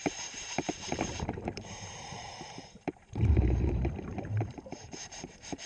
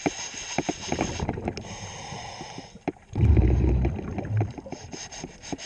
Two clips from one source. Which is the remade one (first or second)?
first